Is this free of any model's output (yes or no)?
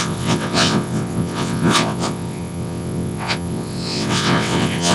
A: no